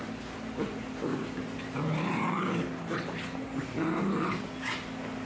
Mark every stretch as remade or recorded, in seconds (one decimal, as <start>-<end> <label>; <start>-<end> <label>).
0.0-1.1 recorded; 1.1-2.2 remade; 2.2-5.3 recorded